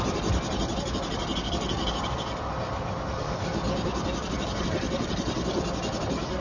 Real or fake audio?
fake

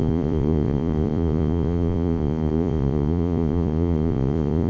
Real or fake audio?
fake